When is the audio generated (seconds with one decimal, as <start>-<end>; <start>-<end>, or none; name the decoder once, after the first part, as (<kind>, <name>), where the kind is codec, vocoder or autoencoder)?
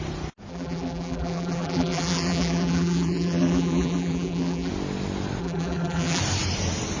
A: 0.5-4.7 (vocoder, BigVGAN v2); 5.4-6.2